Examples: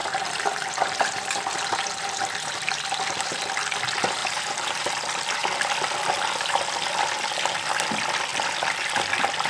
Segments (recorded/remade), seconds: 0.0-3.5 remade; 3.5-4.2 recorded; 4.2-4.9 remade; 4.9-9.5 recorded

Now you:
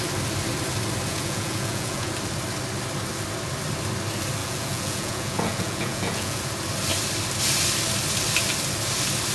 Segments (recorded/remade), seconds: 0.0-1.1 recorded; 1.1-2.1 remade; 2.1-4.4 recorded; 4.4-6.4 remade; 6.4-9.3 recorded

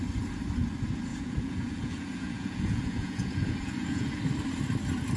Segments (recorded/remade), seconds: 0.0-1.1 recorded; 1.1-4.2 remade; 4.2-5.2 recorded

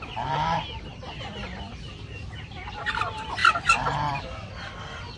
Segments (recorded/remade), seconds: 0.0-5.2 recorded

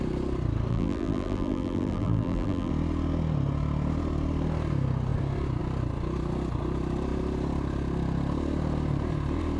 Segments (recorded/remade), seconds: 0.0-0.7 recorded; 0.7-2.7 remade; 2.7-9.6 recorded

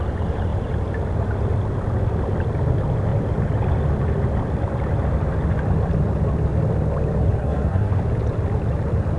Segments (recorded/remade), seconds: 0.0-7.4 recorded; 7.4-7.9 remade; 7.9-9.2 recorded

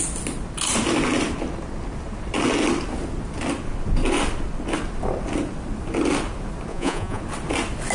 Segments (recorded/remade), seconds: 0.0-6.7 recorded; 6.7-7.2 remade; 7.2-7.9 recorded

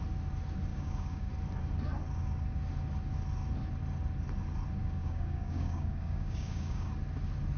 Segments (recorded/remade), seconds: 0.0-0.7 recorded; 0.7-1.3 remade; 1.3-4.8 recorded; 4.8-6.9 remade; 6.9-7.6 recorded